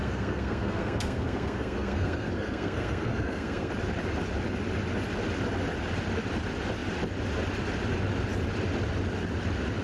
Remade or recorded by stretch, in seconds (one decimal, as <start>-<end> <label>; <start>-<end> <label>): 0.0-3.7 remade; 3.7-9.8 recorded